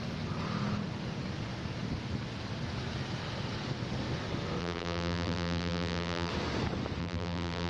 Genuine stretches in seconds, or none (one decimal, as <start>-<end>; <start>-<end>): 0.0-4.6; 6.3-7.0